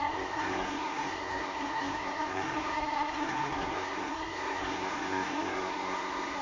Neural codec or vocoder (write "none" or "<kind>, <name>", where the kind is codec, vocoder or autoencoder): codec, SNAC